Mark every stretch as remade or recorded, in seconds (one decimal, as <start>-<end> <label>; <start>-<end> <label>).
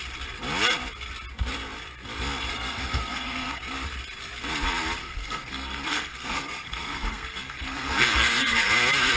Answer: 0.0-2.5 recorded; 2.5-3.6 remade; 3.6-5.0 recorded; 5.0-8.7 remade; 8.7-9.2 recorded